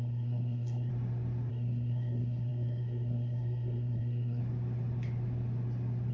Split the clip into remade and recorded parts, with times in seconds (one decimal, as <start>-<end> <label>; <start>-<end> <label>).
0.0-0.9 remade; 0.9-1.5 recorded; 1.5-4.4 remade; 4.4-6.1 recorded